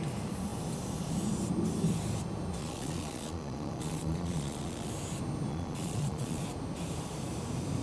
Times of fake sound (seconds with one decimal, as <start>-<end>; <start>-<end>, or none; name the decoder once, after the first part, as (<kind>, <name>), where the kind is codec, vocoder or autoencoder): 2.6-4.9 (vocoder, Vocos); 5.5-6.4